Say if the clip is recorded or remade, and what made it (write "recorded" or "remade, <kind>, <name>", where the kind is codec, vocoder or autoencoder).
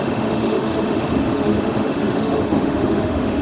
remade, autoencoder, DAC-VAE